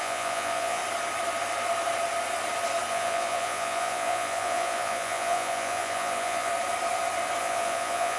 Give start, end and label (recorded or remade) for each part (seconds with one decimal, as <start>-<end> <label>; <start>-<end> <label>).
0.0-0.8 remade; 0.8-2.9 recorded; 2.9-6.5 remade; 6.5-7.4 recorded; 7.4-8.2 remade